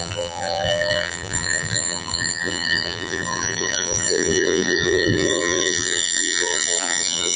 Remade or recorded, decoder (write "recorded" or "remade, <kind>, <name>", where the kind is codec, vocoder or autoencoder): remade, vocoder, BigVGAN v2